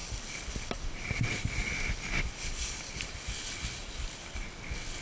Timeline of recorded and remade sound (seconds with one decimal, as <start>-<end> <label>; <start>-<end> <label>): 0.0-5.0 recorded